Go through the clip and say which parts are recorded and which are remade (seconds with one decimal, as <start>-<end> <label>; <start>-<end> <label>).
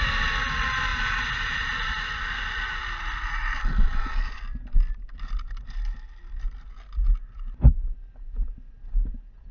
0.0-9.5 recorded